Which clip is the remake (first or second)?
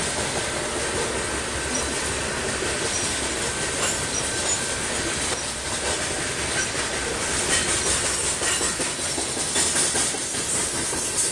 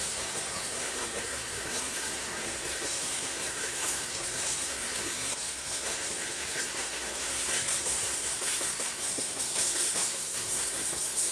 second